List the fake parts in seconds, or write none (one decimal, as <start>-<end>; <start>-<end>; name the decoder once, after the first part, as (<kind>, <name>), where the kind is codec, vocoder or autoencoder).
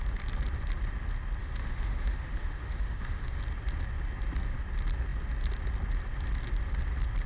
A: 1.4-3.4 (autoencoder, DAC-VAE)